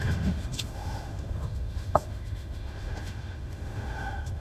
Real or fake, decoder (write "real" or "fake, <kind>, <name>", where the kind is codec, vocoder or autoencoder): fake, autoencoder, DAC-VAE